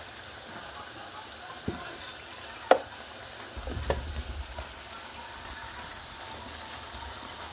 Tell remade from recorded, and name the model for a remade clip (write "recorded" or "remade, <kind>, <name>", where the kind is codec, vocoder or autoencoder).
recorded